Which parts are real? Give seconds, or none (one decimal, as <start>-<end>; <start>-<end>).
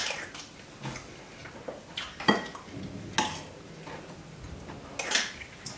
0.0-5.8